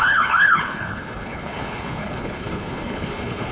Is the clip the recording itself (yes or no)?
no